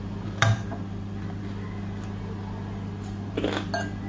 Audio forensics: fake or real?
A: real